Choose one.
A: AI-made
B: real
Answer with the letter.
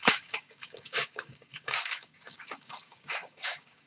A